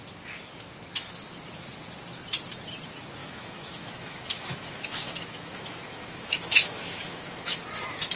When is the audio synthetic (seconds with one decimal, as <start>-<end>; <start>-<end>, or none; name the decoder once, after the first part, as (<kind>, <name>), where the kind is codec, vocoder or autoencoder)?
3.2-7.6 (autoencoder, DAC-VAE)

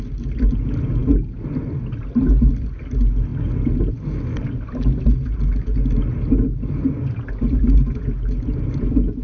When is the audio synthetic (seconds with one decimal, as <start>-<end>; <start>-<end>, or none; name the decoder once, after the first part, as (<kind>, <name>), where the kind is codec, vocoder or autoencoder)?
none

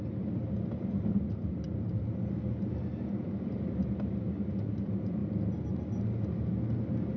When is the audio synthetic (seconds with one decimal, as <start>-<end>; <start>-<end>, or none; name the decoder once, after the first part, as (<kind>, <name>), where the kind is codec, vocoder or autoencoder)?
none

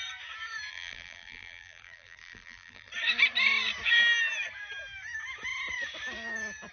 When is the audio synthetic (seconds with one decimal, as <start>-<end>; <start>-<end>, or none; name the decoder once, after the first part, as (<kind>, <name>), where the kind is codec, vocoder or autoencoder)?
0.7-2.9 (vocoder, BigVGAN v2)

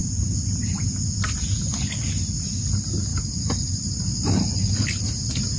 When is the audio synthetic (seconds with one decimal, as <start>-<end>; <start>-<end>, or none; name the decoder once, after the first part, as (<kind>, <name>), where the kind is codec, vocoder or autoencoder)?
none

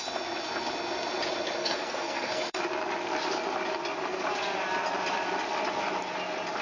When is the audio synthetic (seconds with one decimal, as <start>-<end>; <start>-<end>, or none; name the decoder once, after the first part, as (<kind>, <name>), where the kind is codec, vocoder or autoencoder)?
1.6-2.6 (codec, SNAC)

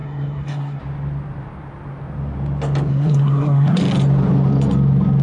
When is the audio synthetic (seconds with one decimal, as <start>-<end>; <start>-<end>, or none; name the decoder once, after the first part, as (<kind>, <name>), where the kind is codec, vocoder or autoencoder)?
0.0-0.8 (codec, SNAC); 2.9-3.8